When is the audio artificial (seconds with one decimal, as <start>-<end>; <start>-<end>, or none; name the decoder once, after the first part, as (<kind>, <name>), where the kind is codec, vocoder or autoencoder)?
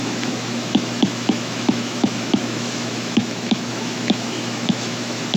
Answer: 0.0-5.4 (autoencoder, DAC-VAE)